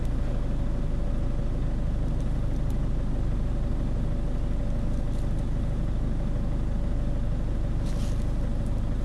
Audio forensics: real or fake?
real